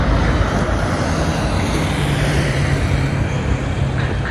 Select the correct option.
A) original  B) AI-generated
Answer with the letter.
B